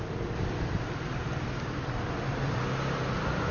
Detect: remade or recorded recorded